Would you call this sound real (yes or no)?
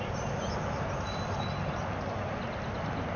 yes